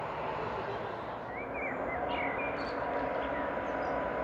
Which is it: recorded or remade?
recorded